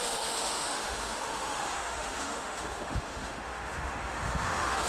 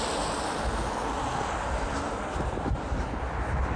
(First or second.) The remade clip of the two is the first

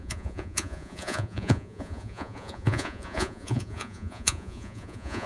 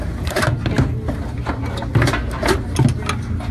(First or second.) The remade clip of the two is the first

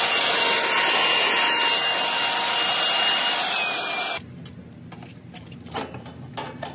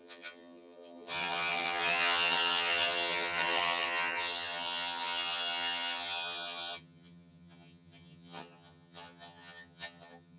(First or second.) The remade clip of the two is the second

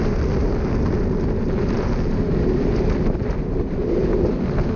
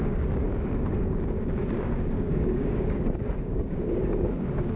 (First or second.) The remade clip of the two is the second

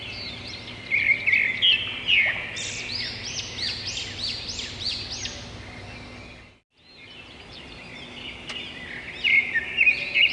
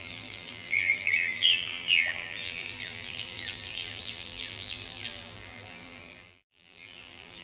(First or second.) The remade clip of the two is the second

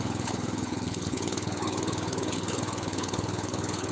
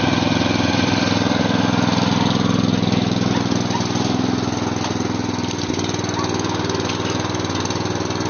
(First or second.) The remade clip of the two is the first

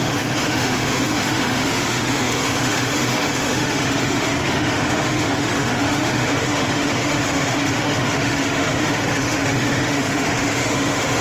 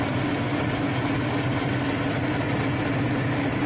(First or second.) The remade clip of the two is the first